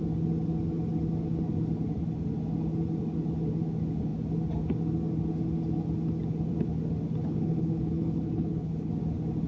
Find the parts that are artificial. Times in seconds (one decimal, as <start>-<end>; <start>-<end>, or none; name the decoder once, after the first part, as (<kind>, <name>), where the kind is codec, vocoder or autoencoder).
7.2-8.9 (codec, HILCodec)